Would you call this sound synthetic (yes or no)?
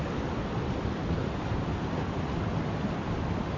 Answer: no